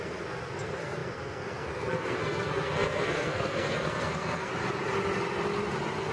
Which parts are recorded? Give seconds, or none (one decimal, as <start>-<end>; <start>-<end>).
4.5-6.1